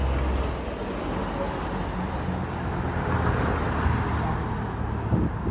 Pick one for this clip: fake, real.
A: real